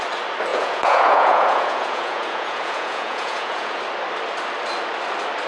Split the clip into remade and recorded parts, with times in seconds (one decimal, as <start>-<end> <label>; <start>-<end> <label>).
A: 0.0-0.5 recorded; 0.5-3.8 remade; 3.8-5.5 recorded